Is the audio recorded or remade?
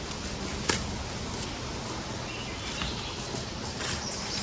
recorded